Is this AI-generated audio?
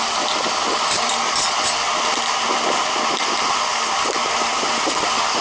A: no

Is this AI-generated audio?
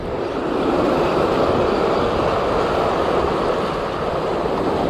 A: no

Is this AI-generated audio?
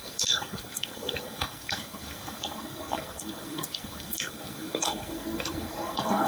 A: yes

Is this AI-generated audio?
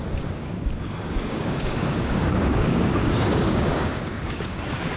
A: yes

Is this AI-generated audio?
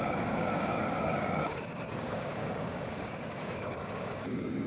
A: yes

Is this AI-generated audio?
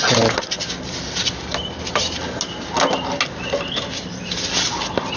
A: no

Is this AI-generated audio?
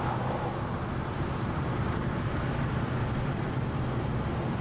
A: no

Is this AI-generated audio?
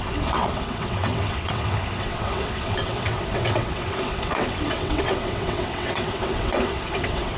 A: yes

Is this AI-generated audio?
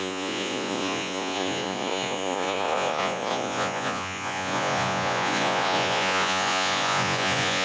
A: yes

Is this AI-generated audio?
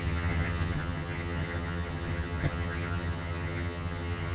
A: yes